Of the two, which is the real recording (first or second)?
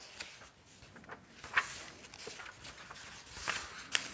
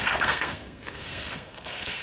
first